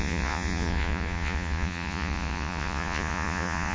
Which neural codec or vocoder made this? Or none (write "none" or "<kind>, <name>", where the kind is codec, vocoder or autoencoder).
vocoder, Vocos